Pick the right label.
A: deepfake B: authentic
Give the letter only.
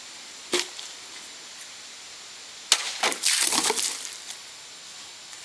B